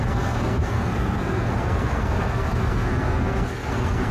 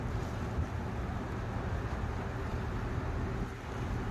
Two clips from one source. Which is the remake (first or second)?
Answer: first